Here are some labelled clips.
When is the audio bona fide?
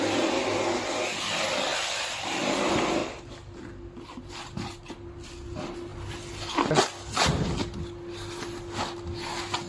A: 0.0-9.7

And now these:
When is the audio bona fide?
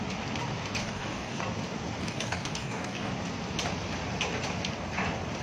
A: 0.0-0.8; 1.4-2.0; 3.1-5.4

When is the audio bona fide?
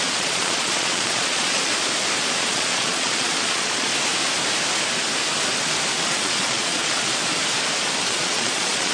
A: 1.7-2.3; 3.9-6.1; 7.2-8.0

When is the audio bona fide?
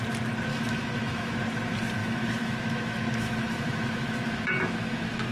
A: 0.0-0.5; 1.3-2.0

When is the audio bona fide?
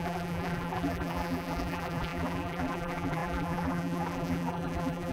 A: none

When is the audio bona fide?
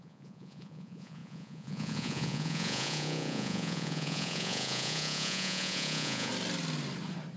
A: 6.3-7.4